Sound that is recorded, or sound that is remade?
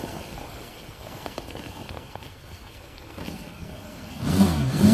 remade